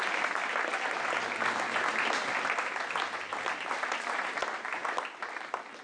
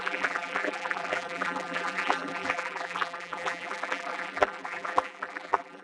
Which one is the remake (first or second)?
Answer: second